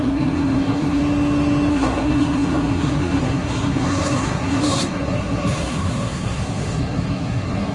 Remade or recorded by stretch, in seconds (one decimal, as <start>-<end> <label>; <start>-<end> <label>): 0.0-1.0 remade; 1.0-1.7 recorded; 1.7-7.7 remade